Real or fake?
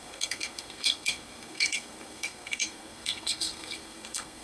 fake